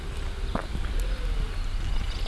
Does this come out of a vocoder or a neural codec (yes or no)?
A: no